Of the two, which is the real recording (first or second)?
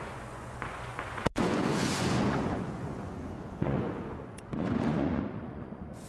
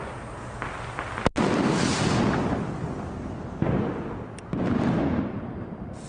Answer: second